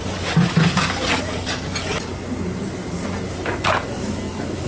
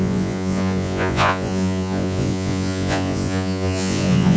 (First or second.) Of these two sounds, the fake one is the second